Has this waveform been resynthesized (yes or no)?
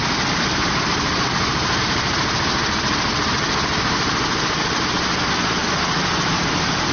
no